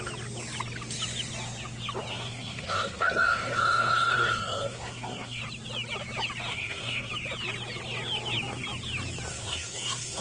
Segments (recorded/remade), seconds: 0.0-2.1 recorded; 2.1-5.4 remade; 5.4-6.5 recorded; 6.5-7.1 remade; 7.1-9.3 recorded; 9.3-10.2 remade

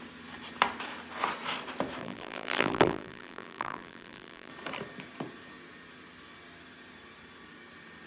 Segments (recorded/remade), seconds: 0.0-2.0 recorded; 2.0-4.5 remade; 4.5-8.1 recorded

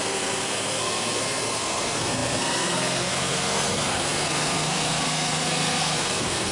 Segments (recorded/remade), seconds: 0.0-6.5 remade